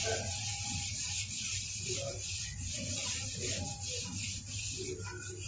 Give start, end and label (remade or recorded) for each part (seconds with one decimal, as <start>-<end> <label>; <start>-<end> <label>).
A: 0.0-0.9 remade; 0.9-5.5 recorded